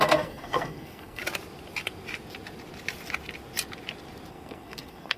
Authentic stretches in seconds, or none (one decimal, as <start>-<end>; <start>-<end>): 1.2-4.3